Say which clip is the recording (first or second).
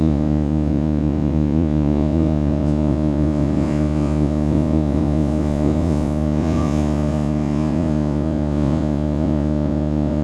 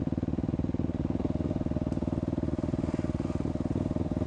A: second